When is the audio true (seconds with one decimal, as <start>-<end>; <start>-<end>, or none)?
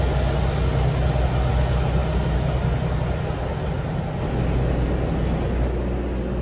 0.0-6.4